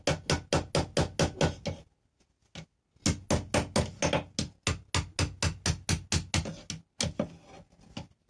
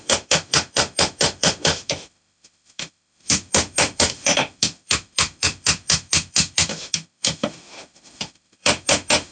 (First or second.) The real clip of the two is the first